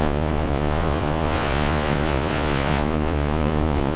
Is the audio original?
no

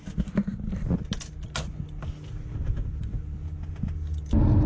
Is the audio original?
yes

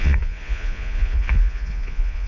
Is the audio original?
no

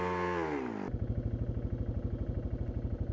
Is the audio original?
yes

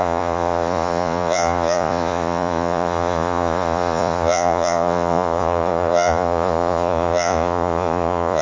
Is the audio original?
no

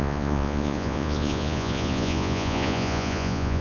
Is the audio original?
no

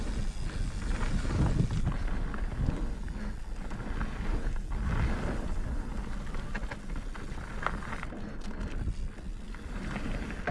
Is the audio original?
yes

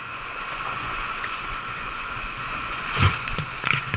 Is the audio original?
no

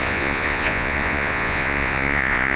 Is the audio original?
no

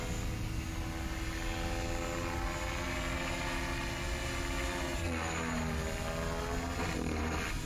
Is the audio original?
yes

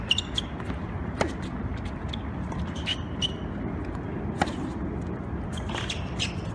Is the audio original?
yes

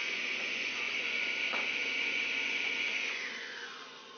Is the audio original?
no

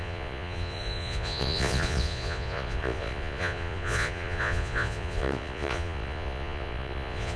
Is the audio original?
no